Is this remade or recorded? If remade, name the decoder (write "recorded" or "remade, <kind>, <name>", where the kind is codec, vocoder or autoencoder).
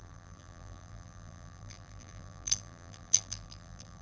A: remade, vocoder, BigVGAN v2